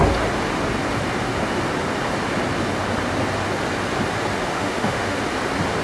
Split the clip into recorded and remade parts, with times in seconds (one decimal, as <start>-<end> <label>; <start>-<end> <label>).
0.0-4.5 recorded; 4.5-5.2 remade; 5.2-5.8 recorded